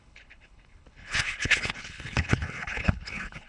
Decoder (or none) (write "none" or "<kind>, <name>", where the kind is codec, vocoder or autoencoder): codec, HILCodec